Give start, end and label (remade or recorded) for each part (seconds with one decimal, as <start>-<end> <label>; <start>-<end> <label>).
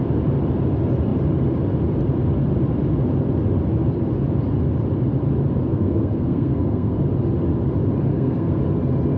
0.0-5.7 recorded; 5.7-7.0 remade; 7.0-8.1 recorded; 8.1-8.6 remade; 8.6-9.2 recorded